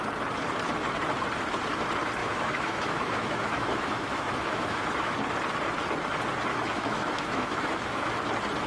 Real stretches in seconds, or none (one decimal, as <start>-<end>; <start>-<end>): 0.0-2.2; 5.1-6.5; 8.1-8.7